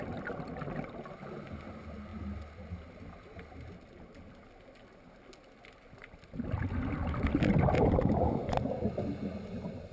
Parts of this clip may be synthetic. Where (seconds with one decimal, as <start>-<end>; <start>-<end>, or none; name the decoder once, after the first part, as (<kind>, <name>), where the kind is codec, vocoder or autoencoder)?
none